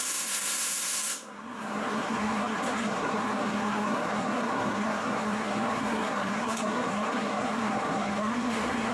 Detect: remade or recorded remade